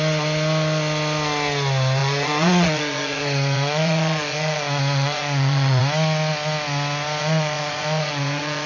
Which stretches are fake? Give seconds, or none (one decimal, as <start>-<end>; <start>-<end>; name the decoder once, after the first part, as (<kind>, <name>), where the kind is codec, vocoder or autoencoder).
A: 2.0-5.8 (vocoder, Vocos); 7.2-8.7